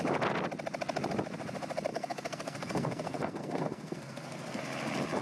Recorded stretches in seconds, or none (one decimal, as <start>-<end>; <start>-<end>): 0.0-1.9; 4.6-5.2